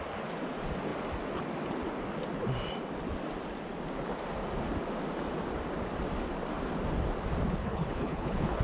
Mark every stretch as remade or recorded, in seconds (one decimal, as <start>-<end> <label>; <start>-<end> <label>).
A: 0.0-7.6 recorded; 7.6-8.6 remade